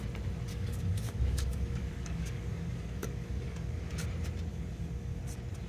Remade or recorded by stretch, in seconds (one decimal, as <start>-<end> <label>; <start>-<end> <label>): 0.0-0.5 recorded; 0.5-3.9 remade; 3.9-4.5 recorded; 4.5-5.2 remade; 5.2-5.7 recorded